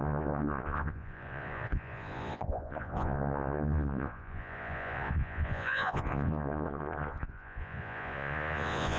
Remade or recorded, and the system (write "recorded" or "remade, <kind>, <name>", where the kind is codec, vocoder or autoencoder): remade, vocoder, Vocos